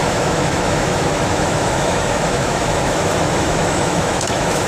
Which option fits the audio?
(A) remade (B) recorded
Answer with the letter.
A